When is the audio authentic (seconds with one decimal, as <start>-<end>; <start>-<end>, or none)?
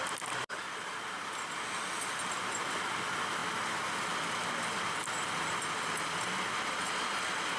0.0-7.6